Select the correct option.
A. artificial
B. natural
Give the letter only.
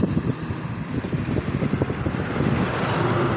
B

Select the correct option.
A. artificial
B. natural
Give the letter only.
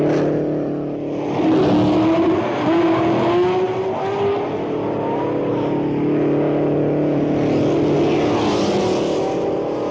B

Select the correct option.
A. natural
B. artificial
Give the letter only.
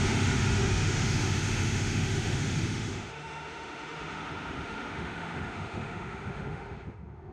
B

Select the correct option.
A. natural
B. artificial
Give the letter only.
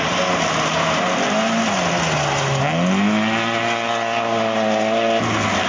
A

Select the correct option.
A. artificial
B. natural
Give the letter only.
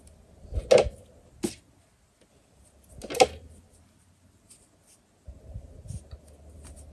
B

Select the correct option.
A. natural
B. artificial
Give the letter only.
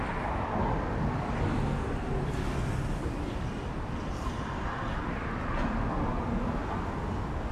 A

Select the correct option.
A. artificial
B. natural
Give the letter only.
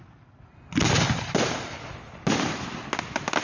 B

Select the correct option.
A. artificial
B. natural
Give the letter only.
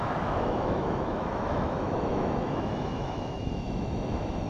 A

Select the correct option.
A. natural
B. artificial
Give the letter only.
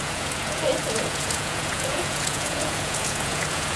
B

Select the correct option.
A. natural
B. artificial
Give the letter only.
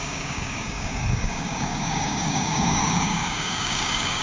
B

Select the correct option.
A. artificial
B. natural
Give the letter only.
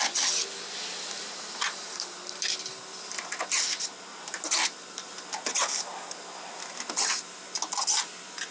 B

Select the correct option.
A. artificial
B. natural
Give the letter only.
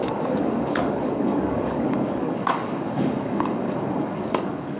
A